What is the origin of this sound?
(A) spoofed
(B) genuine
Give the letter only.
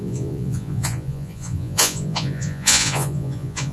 A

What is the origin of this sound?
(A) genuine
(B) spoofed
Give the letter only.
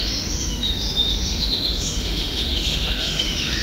B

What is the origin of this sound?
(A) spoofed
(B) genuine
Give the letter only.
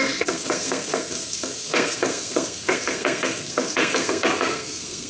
A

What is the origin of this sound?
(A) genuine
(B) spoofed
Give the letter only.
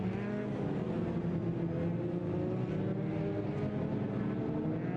A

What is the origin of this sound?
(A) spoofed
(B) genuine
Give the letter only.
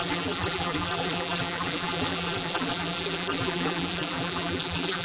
A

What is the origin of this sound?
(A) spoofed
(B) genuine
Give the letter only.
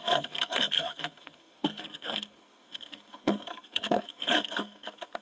A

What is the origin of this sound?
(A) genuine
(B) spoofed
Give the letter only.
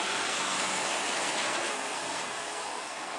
B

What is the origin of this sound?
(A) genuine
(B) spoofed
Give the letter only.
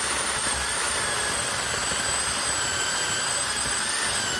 A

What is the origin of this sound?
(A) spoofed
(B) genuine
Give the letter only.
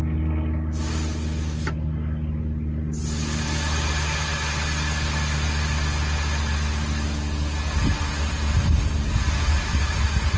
B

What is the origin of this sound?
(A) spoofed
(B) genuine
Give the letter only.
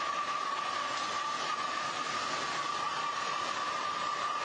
B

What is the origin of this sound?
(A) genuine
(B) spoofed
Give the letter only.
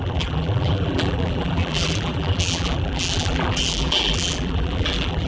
B